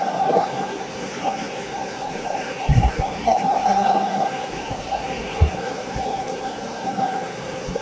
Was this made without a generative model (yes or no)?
no